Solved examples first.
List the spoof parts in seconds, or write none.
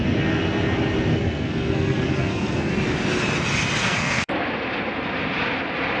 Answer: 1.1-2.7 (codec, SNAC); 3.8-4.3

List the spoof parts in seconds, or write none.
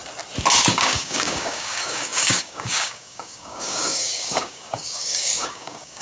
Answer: 0.7-6.0 (codec, DAC)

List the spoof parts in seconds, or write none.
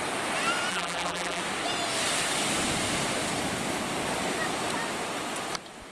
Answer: 0.7-1.4 (vocoder, BigVGAN v2)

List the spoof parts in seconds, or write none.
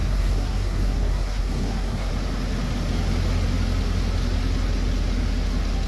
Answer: 0.0-2.1 (codec, SNAC)